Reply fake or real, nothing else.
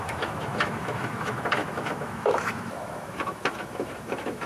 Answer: fake